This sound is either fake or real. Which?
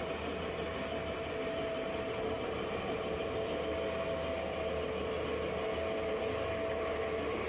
real